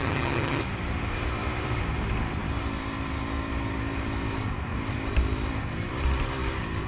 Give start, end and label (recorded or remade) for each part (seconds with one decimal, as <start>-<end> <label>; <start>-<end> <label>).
0.0-0.6 remade; 0.6-6.9 recorded